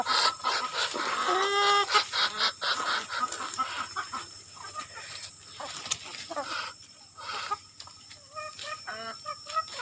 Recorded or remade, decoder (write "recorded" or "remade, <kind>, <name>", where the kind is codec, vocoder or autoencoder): recorded